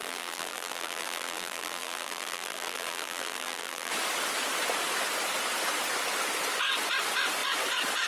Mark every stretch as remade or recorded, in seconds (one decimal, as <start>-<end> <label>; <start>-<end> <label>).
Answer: 0.0-3.9 remade; 3.9-8.1 recorded